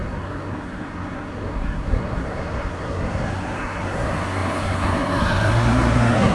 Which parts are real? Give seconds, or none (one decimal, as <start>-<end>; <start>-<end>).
none